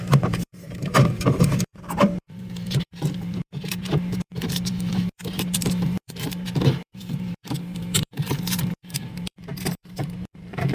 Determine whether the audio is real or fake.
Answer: fake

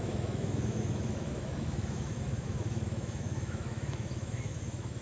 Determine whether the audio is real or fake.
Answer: fake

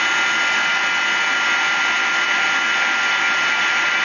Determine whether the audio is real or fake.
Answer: real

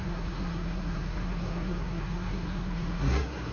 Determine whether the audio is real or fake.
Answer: fake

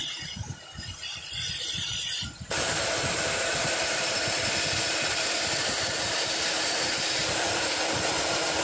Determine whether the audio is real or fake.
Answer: fake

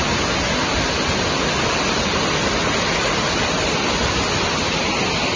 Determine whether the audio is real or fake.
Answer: real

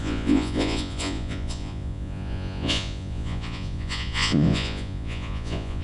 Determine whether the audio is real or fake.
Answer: fake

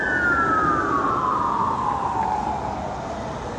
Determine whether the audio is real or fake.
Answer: real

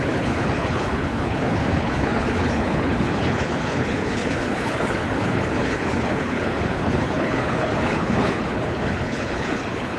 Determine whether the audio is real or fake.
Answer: fake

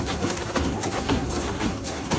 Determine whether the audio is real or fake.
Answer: fake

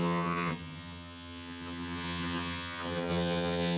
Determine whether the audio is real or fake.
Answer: fake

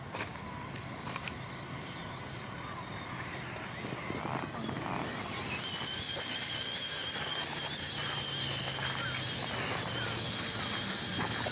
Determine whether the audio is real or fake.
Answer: real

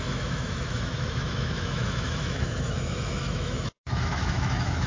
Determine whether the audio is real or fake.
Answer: fake